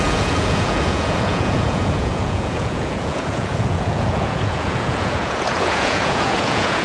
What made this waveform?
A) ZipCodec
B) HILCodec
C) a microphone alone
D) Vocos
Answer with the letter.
D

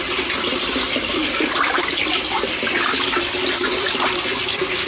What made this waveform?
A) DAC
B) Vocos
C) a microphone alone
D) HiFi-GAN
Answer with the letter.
C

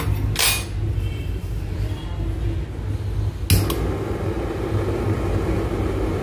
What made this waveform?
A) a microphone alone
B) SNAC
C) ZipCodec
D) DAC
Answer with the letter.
A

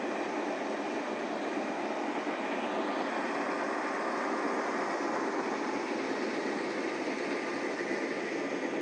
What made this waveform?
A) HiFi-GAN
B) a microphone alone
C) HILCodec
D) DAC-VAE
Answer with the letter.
B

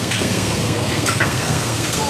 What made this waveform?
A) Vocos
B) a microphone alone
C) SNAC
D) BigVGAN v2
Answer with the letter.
C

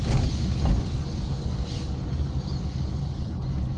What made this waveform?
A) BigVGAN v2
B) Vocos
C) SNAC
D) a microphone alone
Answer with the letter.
D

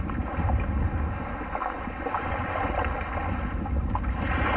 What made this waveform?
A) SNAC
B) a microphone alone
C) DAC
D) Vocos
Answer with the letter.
B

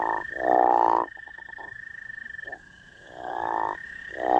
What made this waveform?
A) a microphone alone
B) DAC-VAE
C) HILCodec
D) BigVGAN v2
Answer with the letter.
B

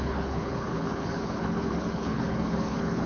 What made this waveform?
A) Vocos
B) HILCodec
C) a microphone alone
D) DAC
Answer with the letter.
B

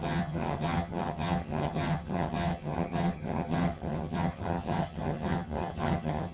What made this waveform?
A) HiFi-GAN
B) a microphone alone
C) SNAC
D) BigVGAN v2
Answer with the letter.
A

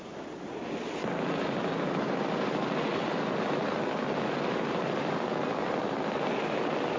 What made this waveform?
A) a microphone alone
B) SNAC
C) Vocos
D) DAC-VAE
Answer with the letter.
A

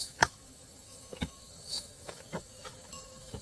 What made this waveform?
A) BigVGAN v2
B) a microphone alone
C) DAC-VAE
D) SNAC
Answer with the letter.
C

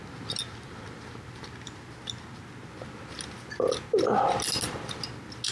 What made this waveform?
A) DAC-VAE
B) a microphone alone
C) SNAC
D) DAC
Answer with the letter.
B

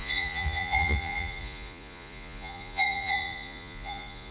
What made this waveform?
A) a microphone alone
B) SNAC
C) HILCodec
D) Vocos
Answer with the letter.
D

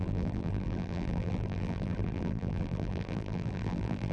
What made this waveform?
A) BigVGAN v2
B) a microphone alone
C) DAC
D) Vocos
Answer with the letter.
A